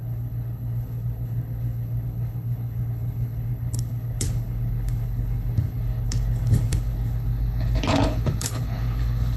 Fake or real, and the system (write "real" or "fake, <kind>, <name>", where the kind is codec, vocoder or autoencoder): fake, codec, HILCodec